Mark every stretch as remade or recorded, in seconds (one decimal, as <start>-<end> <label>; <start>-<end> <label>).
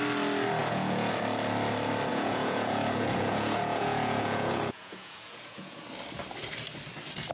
0.0-0.6 recorded; 0.6-1.1 remade; 1.1-2.1 recorded; 2.1-5.8 remade; 5.8-7.3 recorded